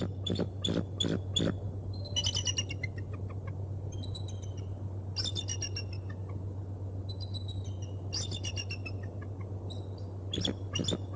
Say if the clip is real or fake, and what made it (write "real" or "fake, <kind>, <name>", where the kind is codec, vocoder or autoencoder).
real